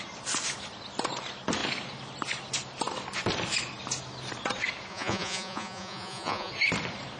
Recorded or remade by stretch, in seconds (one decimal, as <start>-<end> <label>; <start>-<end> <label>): 0.0-4.9 recorded; 4.9-6.5 remade; 6.5-7.2 recorded